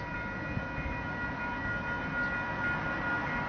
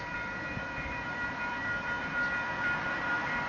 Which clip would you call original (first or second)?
first